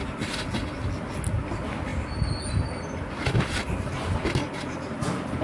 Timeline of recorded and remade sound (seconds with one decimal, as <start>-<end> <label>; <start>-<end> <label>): 0.0-5.4 recorded